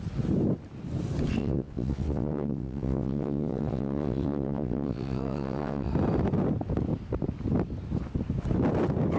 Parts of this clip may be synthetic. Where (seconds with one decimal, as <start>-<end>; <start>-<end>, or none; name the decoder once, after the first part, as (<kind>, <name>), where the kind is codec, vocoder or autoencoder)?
1.4-5.9 (vocoder, WaveNeXt)